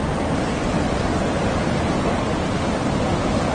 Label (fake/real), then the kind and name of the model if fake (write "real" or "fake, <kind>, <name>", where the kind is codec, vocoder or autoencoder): real